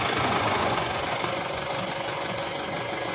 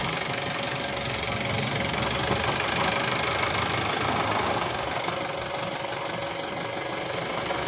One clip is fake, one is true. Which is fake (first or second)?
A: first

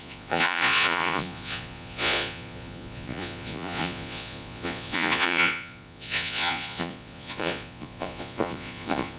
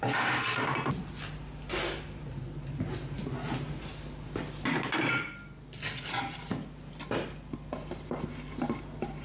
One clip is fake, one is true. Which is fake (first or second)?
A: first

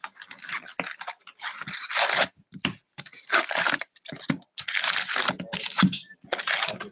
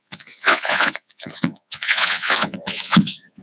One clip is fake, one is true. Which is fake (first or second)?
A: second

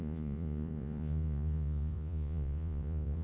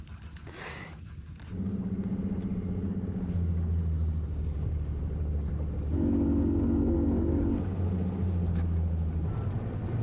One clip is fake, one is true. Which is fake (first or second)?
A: first